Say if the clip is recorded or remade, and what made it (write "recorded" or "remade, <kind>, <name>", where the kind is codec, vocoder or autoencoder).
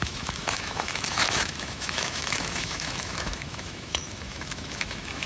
remade, autoencoder, DAC-VAE